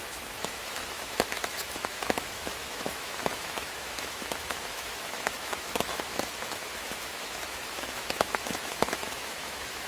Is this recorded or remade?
remade